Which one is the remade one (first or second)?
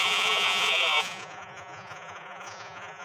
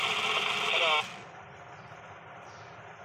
first